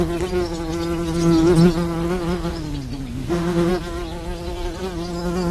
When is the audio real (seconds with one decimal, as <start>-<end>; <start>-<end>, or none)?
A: 0.0-3.1; 3.7-5.5